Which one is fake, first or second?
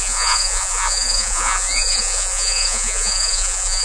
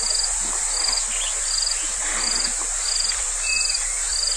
first